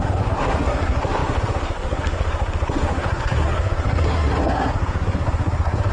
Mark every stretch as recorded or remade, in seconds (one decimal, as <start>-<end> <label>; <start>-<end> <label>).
0.0-5.9 remade